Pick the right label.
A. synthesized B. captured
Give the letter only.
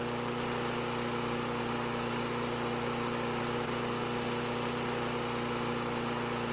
B